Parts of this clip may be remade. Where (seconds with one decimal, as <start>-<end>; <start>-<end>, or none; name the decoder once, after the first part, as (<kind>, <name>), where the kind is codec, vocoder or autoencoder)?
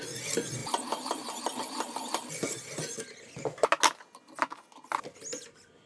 none